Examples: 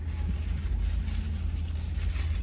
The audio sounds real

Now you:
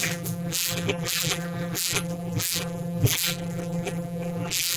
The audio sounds fake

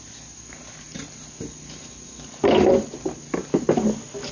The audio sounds real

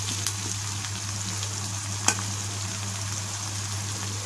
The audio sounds real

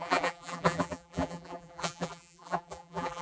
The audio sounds fake